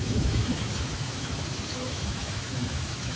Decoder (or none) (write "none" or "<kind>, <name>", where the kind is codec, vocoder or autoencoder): autoencoder, DAC-VAE